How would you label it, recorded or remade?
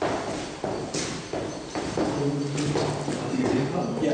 recorded